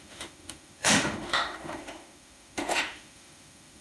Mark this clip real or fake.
fake